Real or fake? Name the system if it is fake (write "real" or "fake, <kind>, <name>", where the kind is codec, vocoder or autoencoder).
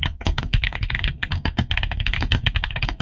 fake, codec, SNAC